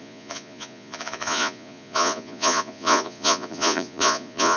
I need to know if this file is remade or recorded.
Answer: remade